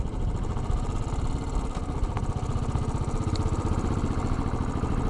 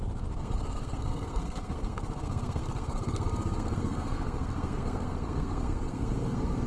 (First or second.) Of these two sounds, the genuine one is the first